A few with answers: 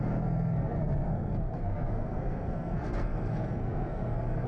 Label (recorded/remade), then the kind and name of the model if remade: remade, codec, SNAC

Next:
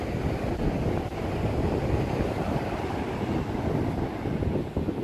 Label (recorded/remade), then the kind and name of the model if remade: recorded